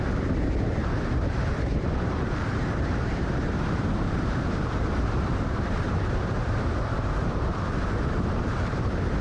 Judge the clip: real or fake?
fake